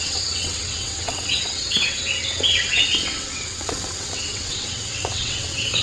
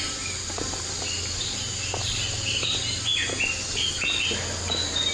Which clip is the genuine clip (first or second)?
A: second